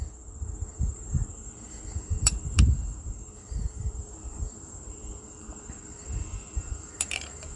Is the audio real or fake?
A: fake